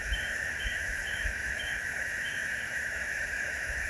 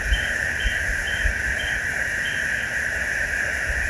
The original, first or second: second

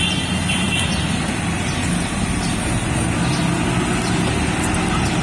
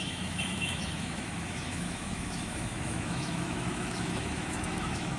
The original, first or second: first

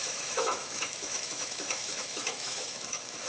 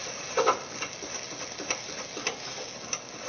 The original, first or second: second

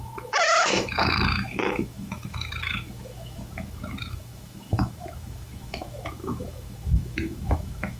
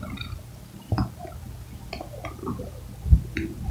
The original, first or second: second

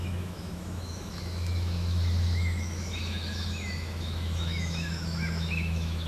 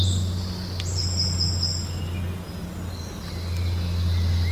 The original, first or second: second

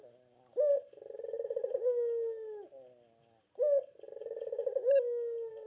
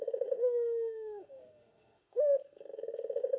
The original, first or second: first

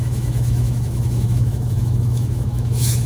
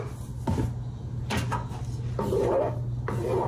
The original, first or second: second